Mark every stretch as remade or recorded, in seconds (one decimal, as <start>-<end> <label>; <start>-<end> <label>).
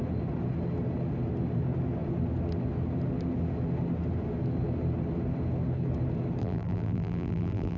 0.0-6.4 recorded; 6.4-7.8 remade